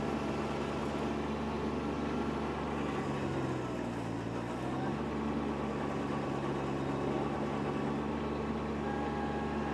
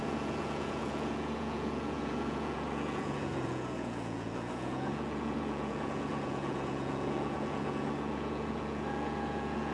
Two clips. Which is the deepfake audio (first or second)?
second